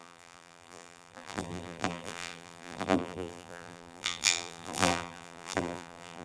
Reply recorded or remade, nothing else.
remade